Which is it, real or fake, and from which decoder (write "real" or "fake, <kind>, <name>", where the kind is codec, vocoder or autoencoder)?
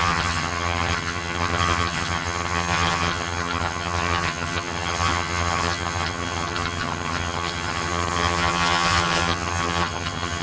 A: fake, vocoder, HiFi-GAN